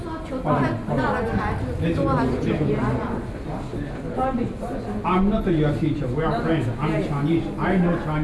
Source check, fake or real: real